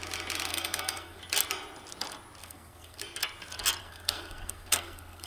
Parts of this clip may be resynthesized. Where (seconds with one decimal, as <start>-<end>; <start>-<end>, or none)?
0.5-1.2; 2.4-3.0; 3.8-5.3

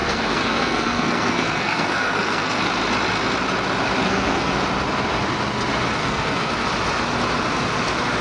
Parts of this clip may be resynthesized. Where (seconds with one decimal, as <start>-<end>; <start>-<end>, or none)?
0.0-2.6; 4.0-4.5; 6.0-6.5

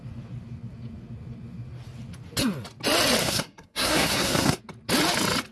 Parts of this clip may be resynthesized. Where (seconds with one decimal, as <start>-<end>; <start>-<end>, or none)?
3.2-4.6

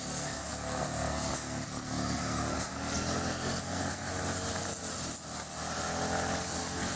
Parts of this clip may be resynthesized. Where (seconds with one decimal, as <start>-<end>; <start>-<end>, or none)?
0.0-4.1; 6.6-7.0

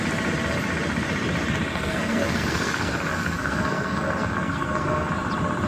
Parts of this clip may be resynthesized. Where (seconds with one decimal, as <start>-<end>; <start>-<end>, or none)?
1.7-5.1